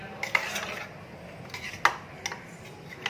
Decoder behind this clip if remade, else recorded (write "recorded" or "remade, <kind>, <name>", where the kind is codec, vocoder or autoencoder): recorded